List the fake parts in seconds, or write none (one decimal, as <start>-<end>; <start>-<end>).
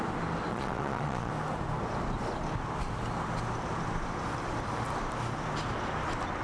0.5-1.3